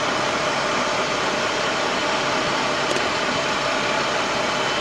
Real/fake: real